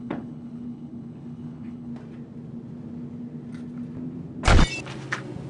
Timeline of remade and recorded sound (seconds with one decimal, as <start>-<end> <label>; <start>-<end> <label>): 0.0-1.9 remade; 1.9-5.5 recorded